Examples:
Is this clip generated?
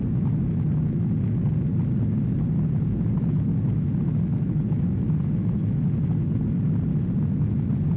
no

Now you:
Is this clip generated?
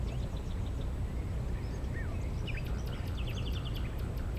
no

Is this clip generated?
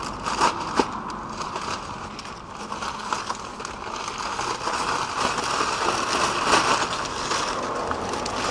no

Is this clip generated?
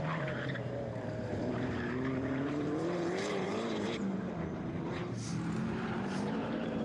yes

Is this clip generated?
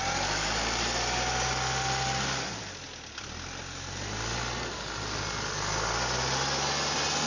no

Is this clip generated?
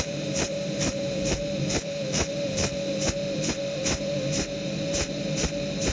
yes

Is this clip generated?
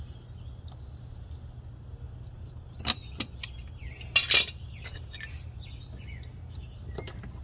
no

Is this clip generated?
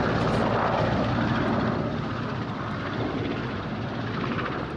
no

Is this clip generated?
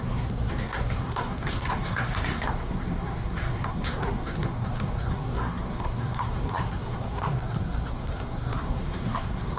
yes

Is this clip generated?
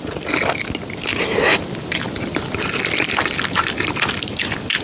no